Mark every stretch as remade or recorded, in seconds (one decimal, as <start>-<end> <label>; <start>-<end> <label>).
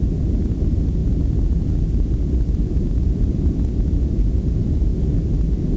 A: 0.0-4.9 remade; 4.9-5.8 recorded